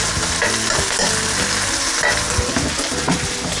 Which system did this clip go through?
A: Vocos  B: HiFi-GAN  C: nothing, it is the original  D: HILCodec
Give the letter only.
C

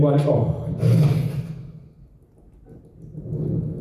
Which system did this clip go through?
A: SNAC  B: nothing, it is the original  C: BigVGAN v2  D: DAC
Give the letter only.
B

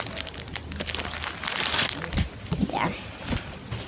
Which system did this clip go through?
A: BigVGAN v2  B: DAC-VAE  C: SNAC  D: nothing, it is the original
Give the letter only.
D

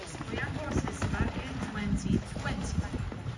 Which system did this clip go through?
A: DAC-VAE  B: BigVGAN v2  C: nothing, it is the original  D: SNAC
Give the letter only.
C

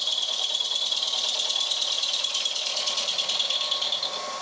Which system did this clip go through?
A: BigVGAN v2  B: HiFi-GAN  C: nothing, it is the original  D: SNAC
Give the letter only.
A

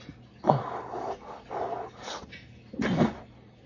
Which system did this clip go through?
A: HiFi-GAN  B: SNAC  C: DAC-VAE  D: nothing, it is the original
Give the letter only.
D